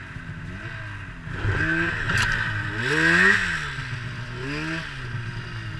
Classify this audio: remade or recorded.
recorded